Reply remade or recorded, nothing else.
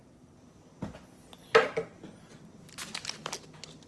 recorded